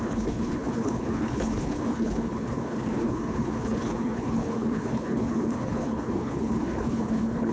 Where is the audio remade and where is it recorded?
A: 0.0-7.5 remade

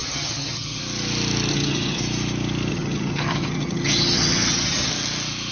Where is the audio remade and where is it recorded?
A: 0.0-0.8 remade; 0.8-1.5 recorded; 1.5-2.0 remade; 2.0-2.7 recorded; 2.7-4.9 remade; 4.9-5.5 recorded